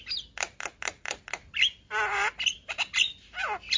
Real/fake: real